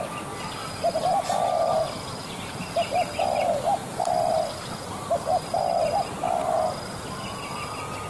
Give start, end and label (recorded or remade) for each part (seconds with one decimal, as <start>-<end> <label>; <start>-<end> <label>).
0.0-0.6 recorded; 0.6-1.7 remade; 1.7-3.8 recorded; 3.8-5.1 remade; 5.1-8.1 recorded